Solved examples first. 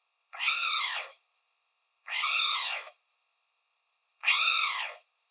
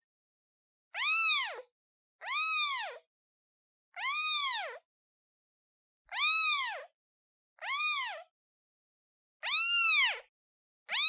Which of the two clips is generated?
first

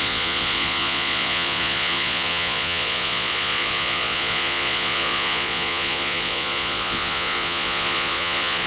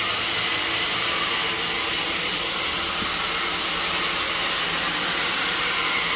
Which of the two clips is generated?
first